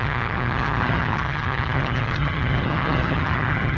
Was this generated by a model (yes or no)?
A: yes